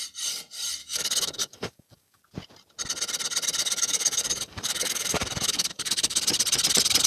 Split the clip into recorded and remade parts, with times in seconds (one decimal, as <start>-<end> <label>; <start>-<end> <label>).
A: 0.0-0.8 recorded; 0.8-2.2 remade; 2.2-3.6 recorded; 3.6-6.2 remade; 6.2-7.1 recorded

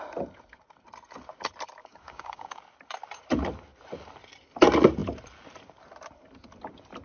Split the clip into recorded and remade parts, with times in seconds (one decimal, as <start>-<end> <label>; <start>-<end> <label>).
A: 0.0-1.8 recorded; 1.8-2.6 remade; 2.6-7.0 recorded